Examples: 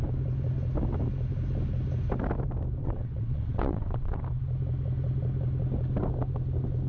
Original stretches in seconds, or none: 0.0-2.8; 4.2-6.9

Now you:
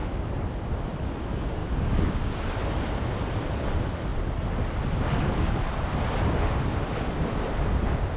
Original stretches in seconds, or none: 0.0-1.6; 2.4-8.2

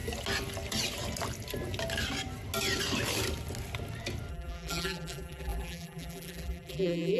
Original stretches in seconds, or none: 0.0-4.3